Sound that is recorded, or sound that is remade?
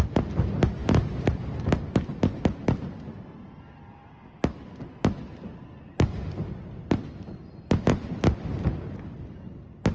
recorded